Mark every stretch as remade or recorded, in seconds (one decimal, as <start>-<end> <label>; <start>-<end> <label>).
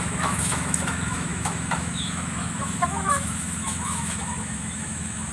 0.0-5.3 remade